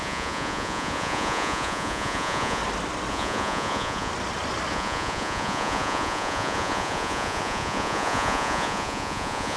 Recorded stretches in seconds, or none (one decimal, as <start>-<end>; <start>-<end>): 2.6-3.1; 4.1-4.7